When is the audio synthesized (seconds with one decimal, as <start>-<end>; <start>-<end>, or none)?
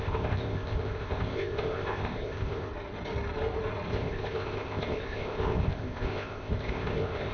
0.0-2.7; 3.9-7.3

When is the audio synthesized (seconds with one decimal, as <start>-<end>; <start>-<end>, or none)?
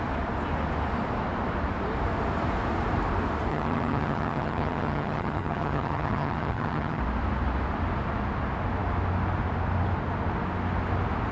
3.5-7.0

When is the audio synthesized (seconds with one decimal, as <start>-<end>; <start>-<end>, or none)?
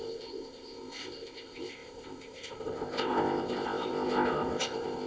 0.0-5.1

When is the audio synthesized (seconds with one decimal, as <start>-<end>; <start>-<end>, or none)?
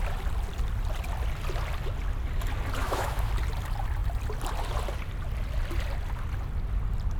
2.8-3.3